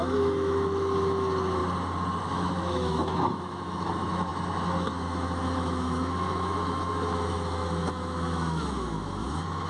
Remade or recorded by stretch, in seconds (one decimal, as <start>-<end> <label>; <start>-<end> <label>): 0.0-1.6 remade; 1.6-2.2 recorded; 2.2-9.7 remade

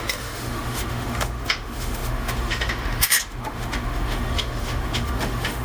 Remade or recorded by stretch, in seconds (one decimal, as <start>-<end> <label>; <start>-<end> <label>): 0.0-5.6 remade

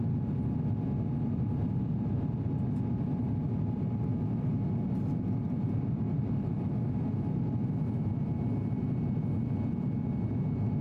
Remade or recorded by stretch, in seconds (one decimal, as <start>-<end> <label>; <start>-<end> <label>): 0.0-10.8 recorded